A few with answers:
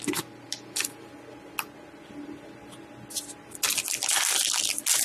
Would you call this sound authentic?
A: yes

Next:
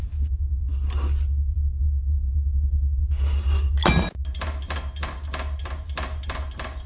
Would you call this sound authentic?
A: yes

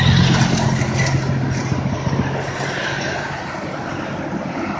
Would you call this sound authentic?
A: yes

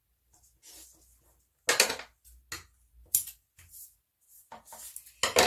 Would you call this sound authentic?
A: yes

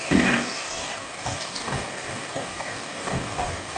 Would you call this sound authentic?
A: no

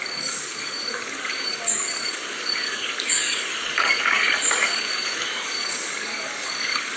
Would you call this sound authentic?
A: no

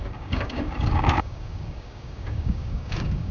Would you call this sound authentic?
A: no